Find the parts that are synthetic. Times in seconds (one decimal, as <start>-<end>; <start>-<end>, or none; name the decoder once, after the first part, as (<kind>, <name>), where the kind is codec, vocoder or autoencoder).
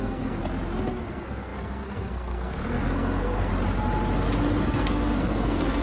0.0-0.4 (codec, SNAC); 1.1-3.5; 4.6-5.8